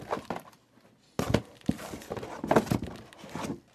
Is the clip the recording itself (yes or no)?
yes